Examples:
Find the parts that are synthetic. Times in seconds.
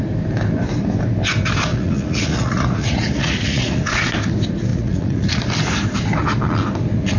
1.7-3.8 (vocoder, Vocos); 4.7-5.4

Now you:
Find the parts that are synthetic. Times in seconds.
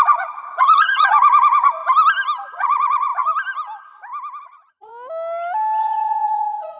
0.0-1.8 (vocoder, Vocos); 2.5-3.1; 4.4-4.9; 5.8-6.8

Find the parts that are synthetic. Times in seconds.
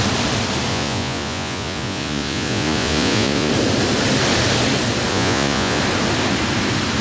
0.7-3.5 (vocoder, Vocos); 5.1-5.8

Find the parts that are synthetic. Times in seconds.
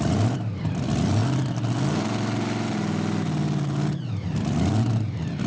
none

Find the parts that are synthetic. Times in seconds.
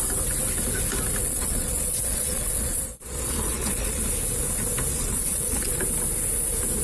1.2-4.0 (vocoder, Vocos); 4.9-5.8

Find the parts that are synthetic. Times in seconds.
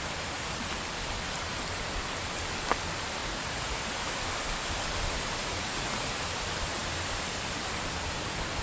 3.2-3.8 (vocoder, Vocos); 5.4-6.1